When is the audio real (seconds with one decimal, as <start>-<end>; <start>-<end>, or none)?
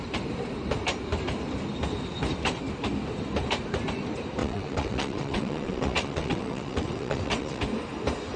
0.0-4.4; 7.6-8.4